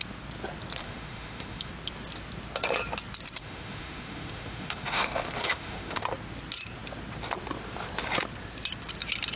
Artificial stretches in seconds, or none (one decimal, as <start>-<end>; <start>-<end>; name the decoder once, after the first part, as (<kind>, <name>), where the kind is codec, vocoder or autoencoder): 0.8-1.7 (autoencoder, DAC-VAE); 3.4-6.0